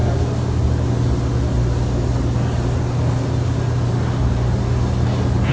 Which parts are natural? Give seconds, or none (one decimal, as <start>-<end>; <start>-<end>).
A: 0.0-5.5